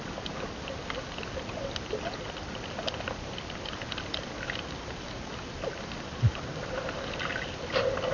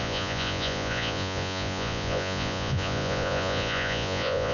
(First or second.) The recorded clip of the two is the first